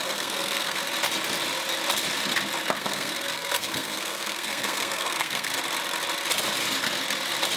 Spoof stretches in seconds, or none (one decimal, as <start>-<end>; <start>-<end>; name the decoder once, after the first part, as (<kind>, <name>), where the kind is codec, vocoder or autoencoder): 0.0-0.8 (codec, SNAC); 2.8-5.5